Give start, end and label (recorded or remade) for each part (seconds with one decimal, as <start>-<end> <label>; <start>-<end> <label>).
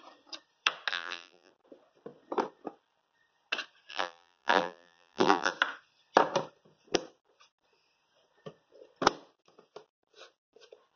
0.0-0.9 recorded; 0.9-1.5 remade; 1.5-3.9 recorded; 3.9-5.5 remade; 5.5-11.0 recorded